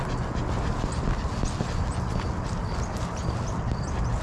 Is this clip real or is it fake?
real